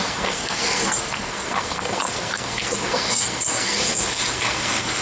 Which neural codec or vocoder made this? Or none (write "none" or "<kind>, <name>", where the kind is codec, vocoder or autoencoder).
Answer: codec, SNAC